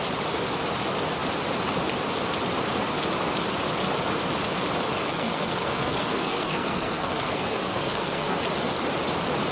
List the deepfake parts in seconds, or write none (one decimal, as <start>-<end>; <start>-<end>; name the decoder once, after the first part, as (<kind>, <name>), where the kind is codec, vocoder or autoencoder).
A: 5.0-8.4 (codec, SNAC)